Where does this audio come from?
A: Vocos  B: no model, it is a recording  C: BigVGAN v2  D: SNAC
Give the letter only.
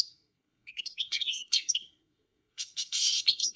D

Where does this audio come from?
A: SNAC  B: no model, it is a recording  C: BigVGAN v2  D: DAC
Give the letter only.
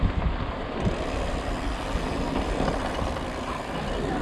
B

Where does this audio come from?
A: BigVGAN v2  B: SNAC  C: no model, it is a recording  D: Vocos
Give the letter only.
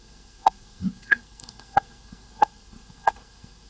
B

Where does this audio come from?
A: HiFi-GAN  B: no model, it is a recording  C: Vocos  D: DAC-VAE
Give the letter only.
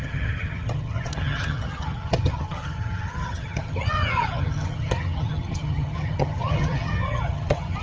A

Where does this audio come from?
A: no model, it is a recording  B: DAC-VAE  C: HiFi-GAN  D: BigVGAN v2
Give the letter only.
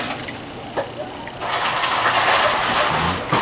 A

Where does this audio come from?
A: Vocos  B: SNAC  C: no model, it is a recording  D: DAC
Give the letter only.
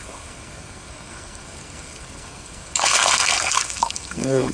B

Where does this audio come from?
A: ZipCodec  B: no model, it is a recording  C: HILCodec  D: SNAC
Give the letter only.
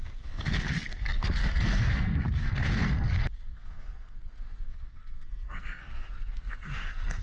D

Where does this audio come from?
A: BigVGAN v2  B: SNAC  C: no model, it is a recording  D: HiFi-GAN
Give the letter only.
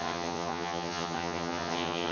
D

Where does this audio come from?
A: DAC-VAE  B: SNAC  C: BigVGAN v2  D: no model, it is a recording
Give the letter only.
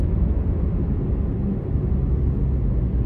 D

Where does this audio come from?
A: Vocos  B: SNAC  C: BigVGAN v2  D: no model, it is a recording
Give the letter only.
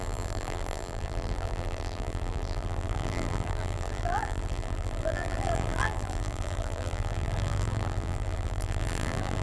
C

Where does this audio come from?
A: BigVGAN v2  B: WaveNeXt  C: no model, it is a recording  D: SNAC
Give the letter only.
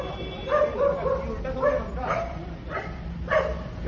C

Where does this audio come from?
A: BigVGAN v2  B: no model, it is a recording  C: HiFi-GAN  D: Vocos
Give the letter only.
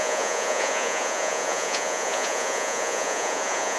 D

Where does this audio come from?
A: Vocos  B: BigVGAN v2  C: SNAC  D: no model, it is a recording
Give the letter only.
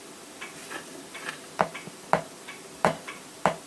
B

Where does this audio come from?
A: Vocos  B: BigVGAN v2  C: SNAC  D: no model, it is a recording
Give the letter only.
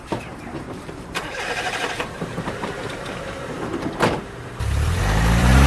B